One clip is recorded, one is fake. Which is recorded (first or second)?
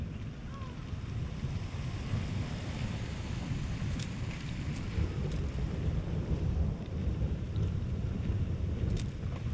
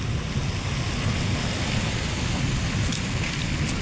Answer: second